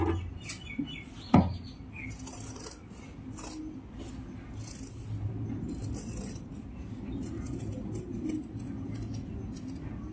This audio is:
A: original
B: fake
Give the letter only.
A